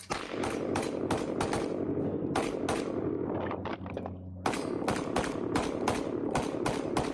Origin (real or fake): real